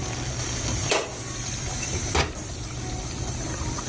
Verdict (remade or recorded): remade